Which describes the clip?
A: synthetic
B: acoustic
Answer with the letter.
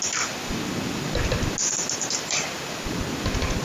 B